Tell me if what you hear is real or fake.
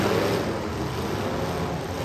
real